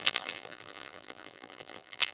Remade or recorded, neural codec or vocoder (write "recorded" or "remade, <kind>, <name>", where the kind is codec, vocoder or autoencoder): remade, vocoder, BigVGAN v2